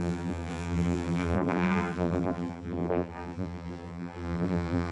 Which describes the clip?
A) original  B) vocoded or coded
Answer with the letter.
B